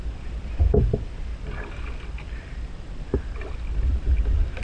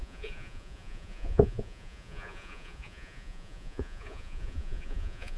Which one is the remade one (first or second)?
second